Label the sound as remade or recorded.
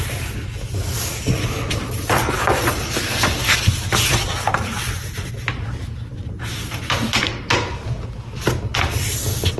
recorded